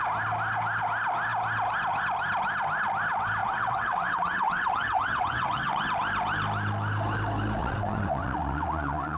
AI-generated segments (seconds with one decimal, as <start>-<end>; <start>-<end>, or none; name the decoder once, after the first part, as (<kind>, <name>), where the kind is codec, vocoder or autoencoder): 3.4-5.8 (vocoder, WaveNeXt); 7.6-9.2